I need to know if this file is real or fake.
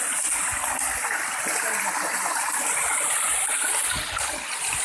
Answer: real